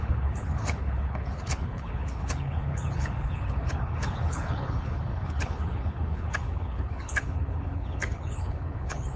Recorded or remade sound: remade